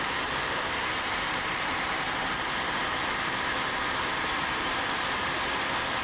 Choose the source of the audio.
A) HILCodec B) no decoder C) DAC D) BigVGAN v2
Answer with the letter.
D